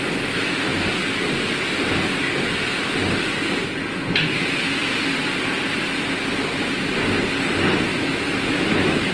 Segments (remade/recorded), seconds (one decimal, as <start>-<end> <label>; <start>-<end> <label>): 0.0-7.9 recorded; 7.9-9.1 remade